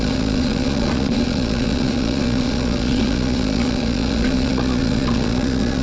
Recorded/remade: remade